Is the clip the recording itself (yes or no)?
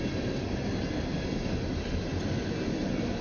yes